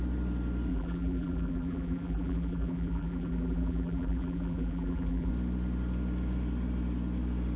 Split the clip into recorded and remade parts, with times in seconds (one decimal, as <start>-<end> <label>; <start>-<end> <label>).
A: 0.0-0.7 recorded; 0.7-5.3 remade; 5.3-7.6 recorded